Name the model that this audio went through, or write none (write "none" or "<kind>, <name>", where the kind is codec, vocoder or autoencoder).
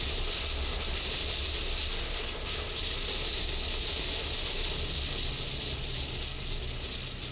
none